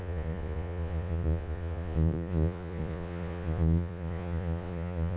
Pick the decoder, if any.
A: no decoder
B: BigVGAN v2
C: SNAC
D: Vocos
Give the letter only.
D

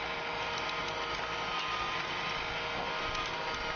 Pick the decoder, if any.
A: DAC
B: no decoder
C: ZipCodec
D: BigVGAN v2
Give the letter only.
B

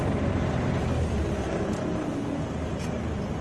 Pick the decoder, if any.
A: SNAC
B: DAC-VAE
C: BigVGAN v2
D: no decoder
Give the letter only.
C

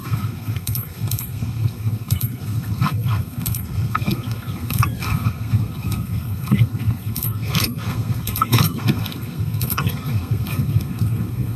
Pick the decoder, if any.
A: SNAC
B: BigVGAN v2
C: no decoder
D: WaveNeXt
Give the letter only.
A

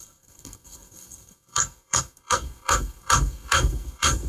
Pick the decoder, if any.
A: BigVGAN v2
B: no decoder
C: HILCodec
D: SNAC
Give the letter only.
D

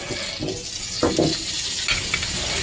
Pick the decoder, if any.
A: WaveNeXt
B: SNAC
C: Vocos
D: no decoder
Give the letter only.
D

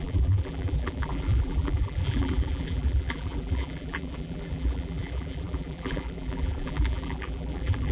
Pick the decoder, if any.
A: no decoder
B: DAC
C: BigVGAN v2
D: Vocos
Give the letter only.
C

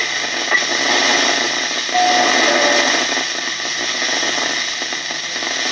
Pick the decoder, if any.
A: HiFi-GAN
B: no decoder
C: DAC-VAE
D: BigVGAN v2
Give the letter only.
B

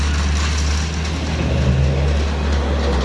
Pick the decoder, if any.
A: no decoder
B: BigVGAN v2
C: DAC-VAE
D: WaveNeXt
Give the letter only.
A